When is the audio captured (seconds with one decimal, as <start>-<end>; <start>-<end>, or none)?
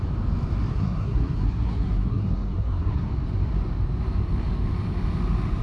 0.0-0.7; 3.1-5.6